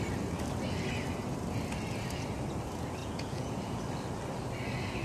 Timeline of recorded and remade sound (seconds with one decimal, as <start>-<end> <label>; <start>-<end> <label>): 0.0-3.0 recorded; 3.0-3.8 remade; 3.8-5.0 recorded